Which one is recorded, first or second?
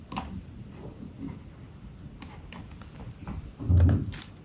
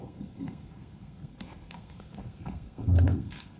first